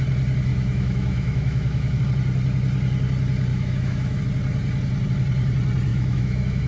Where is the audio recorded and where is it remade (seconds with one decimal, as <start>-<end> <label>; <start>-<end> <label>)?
0.0-0.5 recorded; 0.5-2.0 remade; 2.0-3.5 recorded; 3.5-4.2 remade; 4.2-5.9 recorded; 5.9-6.7 remade